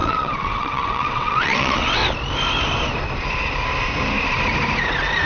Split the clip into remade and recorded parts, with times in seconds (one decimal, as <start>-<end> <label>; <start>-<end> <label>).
0.0-2.0 remade; 2.0-5.3 recorded